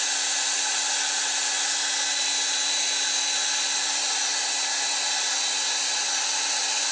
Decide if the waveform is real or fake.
real